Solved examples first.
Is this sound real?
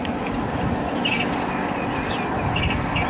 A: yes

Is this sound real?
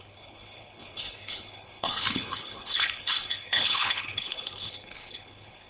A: no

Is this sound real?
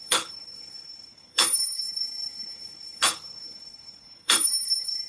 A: no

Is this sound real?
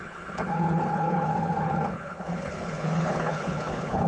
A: no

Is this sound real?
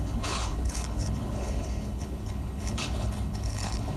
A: no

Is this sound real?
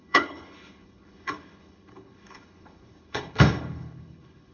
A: no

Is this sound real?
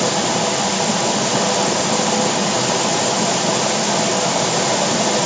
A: yes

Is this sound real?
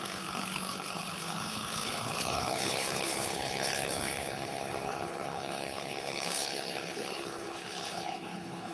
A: no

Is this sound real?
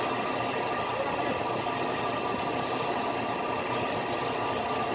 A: yes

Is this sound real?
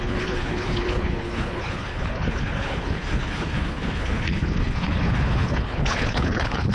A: no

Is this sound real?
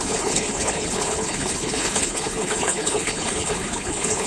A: no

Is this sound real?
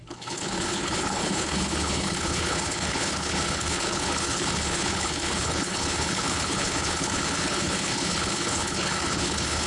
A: no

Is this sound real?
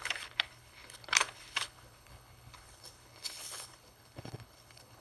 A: no